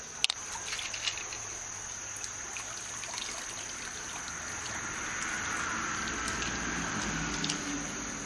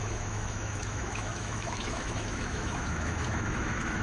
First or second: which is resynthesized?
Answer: second